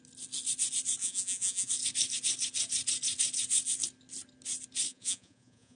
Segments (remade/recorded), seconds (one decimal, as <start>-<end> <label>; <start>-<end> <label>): 0.0-1.0 recorded; 1.0-1.7 remade; 1.7-4.9 recorded; 4.9-5.8 remade